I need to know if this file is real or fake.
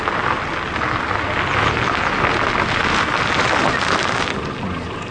real